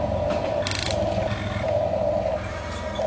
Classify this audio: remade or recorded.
recorded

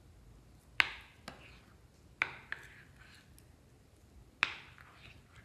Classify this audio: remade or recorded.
recorded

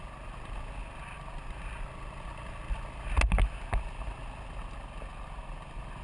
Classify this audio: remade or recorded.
recorded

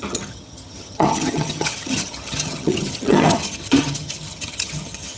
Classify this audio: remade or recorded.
remade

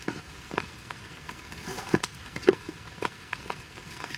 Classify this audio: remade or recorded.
remade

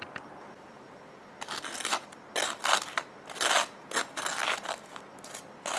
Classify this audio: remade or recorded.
recorded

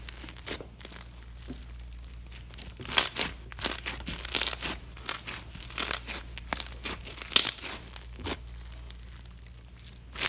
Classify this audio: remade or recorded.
recorded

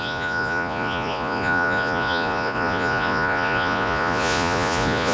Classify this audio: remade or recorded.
remade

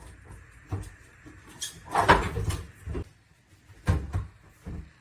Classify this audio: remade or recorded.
recorded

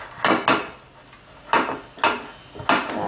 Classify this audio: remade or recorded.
recorded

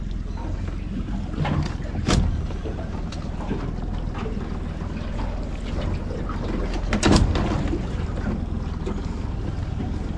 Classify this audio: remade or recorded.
recorded